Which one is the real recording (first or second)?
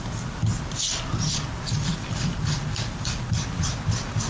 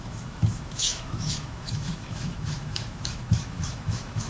first